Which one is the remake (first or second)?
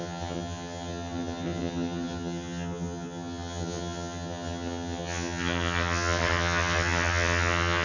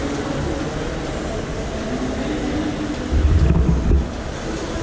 first